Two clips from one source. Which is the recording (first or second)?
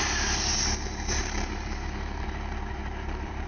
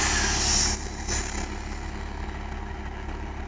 second